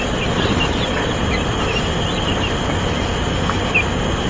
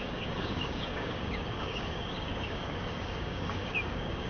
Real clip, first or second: first